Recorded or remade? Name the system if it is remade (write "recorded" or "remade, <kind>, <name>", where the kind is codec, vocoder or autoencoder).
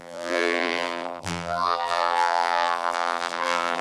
remade, vocoder, BigVGAN v2